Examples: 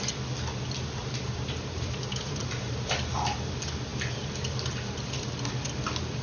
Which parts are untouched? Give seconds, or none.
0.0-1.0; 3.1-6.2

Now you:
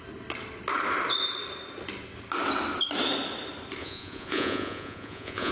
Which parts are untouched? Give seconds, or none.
0.0-3.8

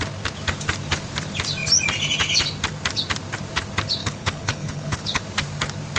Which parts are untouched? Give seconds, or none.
0.0-4.0; 5.2-6.0

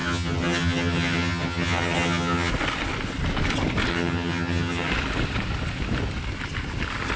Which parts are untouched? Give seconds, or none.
2.5-3.9; 4.9-7.2

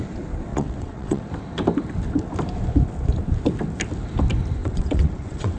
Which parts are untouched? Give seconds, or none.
0.0-0.5; 1.2-4.6